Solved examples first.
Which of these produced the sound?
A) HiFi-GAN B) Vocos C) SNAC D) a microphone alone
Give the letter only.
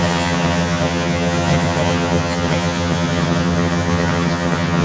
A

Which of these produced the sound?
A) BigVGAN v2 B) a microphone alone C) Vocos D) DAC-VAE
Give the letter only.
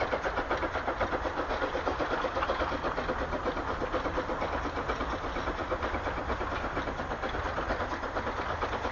B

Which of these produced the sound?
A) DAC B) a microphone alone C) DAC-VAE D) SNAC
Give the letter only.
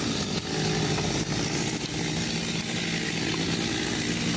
B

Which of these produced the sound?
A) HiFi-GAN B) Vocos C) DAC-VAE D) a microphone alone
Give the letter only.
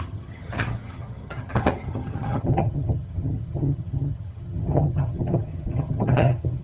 A